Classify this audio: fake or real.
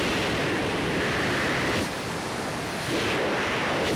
real